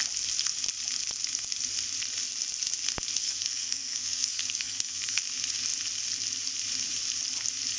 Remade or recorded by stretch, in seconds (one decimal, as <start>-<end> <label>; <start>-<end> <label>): 0.0-3.2 recorded; 3.2-5.2 remade; 5.2-7.8 recorded